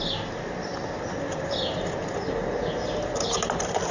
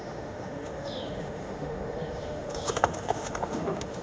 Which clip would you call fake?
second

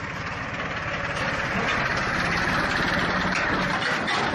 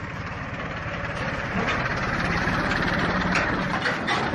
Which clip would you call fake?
second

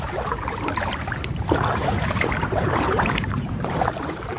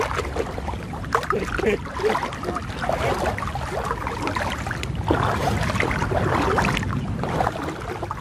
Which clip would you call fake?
first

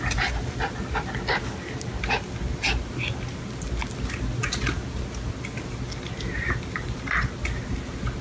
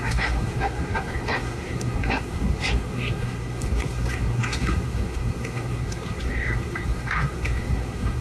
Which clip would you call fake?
second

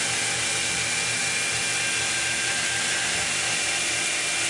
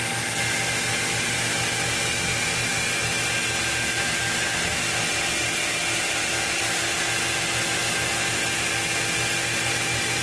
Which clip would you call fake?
second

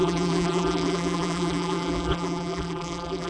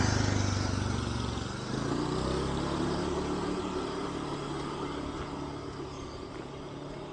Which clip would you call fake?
first